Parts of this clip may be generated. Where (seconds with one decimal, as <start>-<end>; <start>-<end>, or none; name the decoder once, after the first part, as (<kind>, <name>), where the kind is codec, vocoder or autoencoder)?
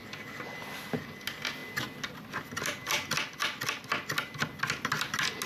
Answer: none